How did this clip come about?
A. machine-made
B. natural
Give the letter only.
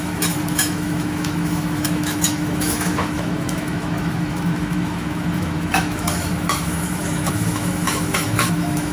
A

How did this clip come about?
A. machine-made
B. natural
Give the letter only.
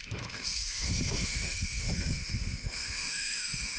A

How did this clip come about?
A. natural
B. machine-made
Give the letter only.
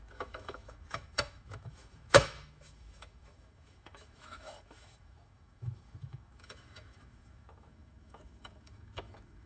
B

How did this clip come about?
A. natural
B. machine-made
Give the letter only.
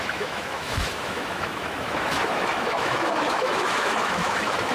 B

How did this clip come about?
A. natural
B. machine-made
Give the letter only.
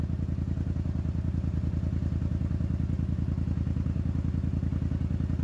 A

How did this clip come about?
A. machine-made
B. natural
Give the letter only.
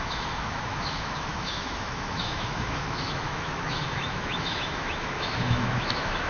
A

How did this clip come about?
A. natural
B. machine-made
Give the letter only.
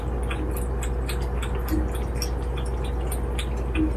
A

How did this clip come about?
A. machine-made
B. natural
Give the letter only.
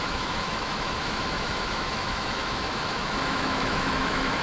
A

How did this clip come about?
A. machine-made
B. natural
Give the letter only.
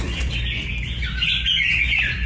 B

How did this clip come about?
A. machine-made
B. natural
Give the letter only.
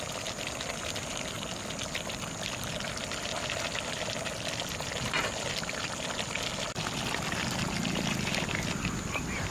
B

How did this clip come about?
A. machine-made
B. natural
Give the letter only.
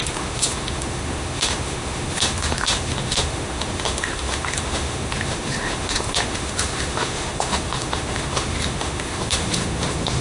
A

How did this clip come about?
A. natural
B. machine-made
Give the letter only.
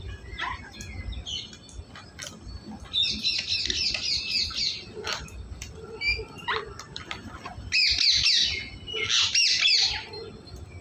A